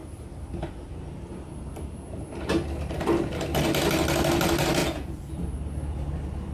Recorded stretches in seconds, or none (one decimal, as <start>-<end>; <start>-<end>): 0.0-4.8; 5.3-6.5

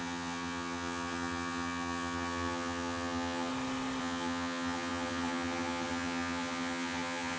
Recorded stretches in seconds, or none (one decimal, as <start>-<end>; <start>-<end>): 3.5-4.0

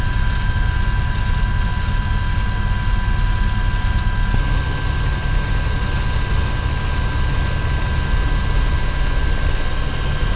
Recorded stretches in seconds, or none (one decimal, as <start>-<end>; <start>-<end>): 0.0-10.4

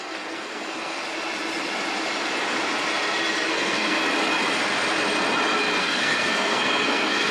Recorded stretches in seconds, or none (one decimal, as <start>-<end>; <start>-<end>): 1.0-3.5; 4.0-5.8

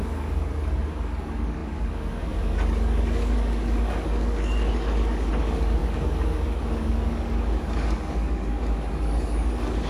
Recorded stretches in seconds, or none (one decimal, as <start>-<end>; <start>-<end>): none

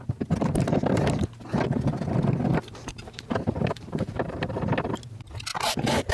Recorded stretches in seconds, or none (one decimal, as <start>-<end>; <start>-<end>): 0.0-2.5; 4.5-5.5

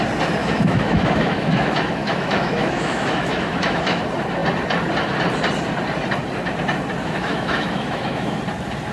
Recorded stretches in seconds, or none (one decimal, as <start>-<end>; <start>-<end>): 0.0-0.4; 4.0-7.0; 8.4-8.9